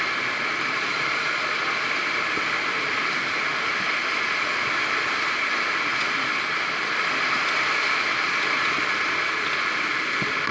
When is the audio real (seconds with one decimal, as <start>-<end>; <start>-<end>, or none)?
0.0-0.9; 1.4-10.5